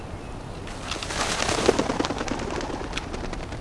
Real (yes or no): yes